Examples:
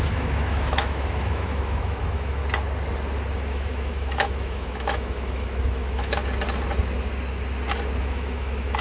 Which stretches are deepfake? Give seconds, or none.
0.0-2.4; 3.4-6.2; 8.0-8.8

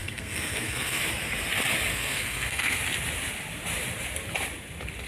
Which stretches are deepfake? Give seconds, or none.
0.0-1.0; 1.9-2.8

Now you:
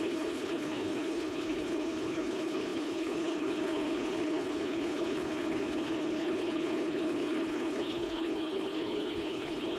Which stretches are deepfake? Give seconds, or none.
0.0-9.8

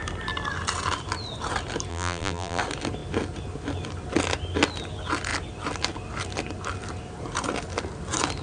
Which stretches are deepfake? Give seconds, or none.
1.9-2.6